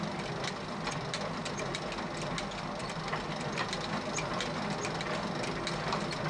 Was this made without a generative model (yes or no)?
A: yes